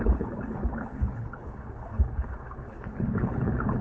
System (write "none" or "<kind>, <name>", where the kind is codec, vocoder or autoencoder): codec, HILCodec